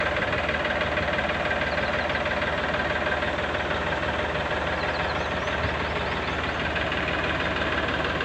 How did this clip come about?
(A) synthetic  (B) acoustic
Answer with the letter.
B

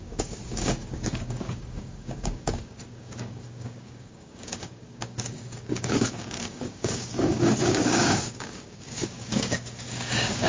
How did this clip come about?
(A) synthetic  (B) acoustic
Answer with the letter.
A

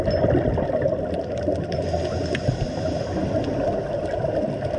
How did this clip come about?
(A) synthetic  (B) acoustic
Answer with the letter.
B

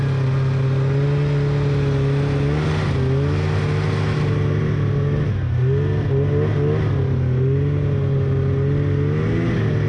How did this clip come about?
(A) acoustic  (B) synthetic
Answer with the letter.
A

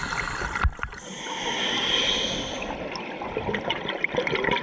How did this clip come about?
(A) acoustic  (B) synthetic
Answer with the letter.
A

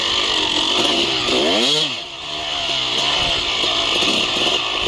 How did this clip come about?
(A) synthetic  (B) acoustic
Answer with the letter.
B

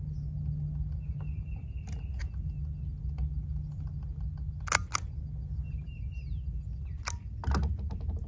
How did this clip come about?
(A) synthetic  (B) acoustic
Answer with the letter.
B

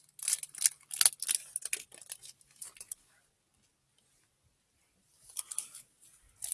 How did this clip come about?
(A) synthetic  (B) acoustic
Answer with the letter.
B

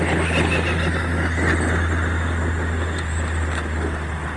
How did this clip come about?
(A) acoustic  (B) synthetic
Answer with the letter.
A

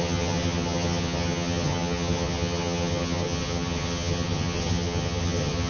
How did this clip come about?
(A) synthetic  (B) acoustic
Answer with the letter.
A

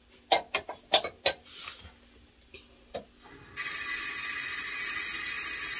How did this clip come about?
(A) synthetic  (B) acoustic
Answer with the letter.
B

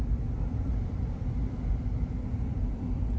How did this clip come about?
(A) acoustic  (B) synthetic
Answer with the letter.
B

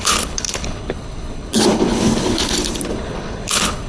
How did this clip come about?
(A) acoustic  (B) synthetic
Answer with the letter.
B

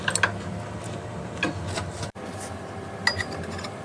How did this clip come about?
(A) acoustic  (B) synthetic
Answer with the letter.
A